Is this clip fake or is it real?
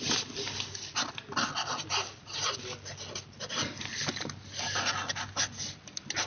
real